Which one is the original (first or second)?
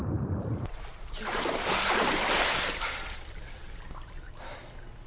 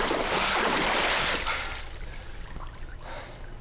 second